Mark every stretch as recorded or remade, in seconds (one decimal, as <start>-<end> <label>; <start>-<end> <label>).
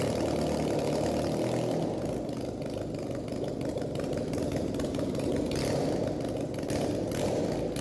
0.0-3.7 recorded; 3.7-5.3 remade; 5.3-7.8 recorded